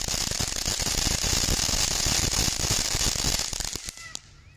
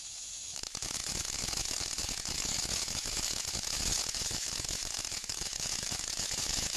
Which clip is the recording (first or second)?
first